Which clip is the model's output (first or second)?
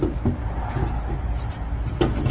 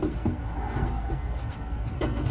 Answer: second